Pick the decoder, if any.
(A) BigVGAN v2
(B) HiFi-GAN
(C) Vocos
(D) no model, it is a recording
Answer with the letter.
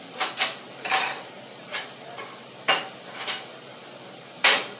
A